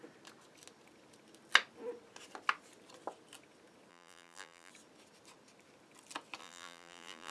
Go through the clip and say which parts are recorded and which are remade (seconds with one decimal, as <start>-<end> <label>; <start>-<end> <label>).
0.0-3.9 recorded; 3.9-4.7 remade; 4.7-6.4 recorded; 6.4-7.3 remade